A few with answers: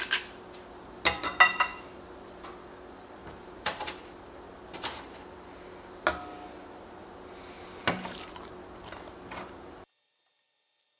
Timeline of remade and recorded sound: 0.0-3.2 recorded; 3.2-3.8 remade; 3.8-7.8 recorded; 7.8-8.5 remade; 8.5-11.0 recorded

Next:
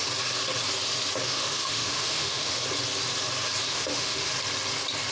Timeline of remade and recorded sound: 0.0-1.2 recorded; 1.2-2.6 remade; 2.6-3.7 recorded; 3.7-4.3 remade; 4.3-5.1 recorded

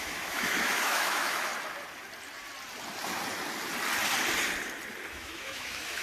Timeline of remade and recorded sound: 0.0-1.5 remade; 1.5-5.1 recorded; 5.1-6.0 remade

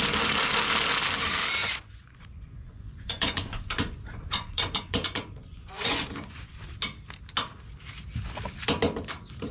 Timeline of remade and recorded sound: 0.0-1.6 recorded; 1.6-6.5 remade; 6.5-9.5 recorded

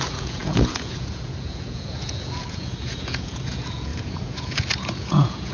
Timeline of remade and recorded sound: 0.0-5.5 remade

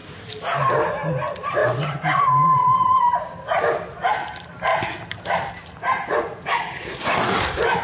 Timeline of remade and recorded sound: 0.0-1.6 recorded; 1.6-2.2 remade; 2.2-4.7 recorded; 4.7-5.5 remade; 5.5-7.8 recorded